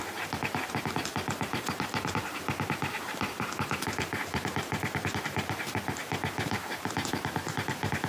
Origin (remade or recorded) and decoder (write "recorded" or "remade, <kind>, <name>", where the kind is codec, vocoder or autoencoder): remade, vocoder, BigVGAN v2